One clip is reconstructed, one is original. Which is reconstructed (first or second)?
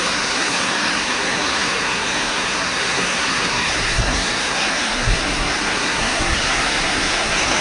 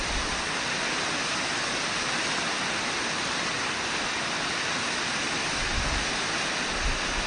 first